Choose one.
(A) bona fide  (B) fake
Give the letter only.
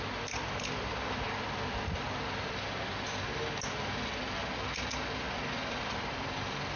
A